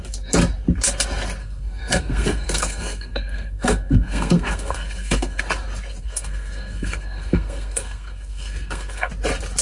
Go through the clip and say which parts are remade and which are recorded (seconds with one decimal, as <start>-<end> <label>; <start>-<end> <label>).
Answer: 0.0-1.4 recorded; 1.4-5.4 remade; 5.4-6.0 recorded; 6.0-9.1 remade; 9.1-9.6 recorded